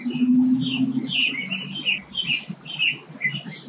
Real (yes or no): yes